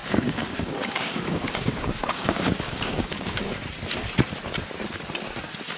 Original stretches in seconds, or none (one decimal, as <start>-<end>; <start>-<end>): 3.5-5.8